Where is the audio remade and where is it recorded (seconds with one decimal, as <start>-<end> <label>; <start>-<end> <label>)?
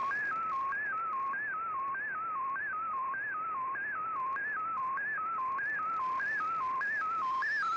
0.0-7.8 recorded